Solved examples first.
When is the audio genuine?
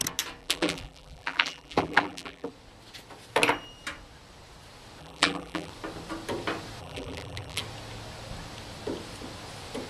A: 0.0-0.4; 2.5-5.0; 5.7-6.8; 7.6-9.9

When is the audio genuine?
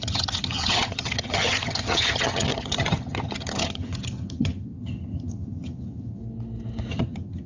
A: 6.2-6.9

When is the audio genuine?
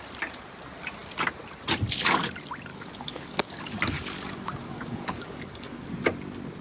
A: 0.0-2.7; 5.9-6.6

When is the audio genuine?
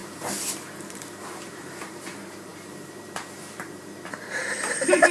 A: none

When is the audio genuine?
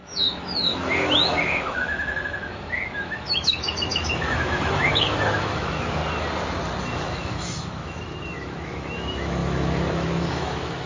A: 6.0-6.8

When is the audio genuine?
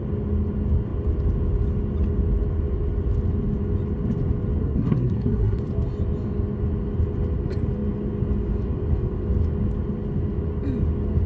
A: 0.0-4.6; 5.6-11.3